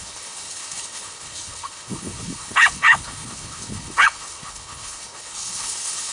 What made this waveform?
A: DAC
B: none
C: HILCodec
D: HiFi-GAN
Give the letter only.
C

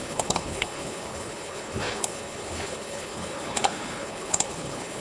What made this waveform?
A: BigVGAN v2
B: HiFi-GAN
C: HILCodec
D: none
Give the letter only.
C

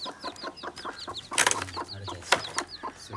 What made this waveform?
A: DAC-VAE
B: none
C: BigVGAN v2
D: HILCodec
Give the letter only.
B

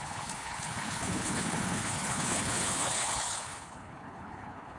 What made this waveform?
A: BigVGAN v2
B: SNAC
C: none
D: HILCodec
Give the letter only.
D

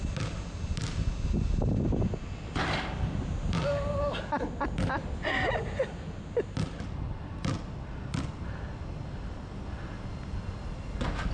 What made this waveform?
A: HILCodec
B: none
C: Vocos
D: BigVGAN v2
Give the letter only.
B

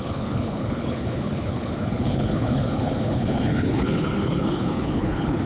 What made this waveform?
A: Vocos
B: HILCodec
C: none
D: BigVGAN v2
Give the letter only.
B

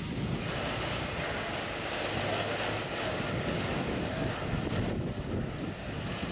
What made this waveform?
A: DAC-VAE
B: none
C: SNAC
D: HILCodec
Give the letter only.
B